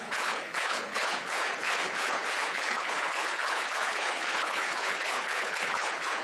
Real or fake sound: fake